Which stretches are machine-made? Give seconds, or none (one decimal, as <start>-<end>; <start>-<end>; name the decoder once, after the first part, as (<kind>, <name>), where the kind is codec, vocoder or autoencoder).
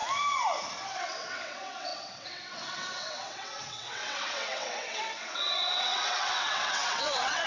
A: 0.9-7.5 (vocoder, WaveNeXt)